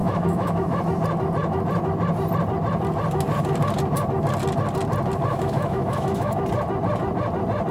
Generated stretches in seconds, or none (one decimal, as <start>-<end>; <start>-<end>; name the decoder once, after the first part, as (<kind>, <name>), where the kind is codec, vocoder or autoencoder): 0.0-0.8 (autoencoder, DAC-VAE); 5.3-6.4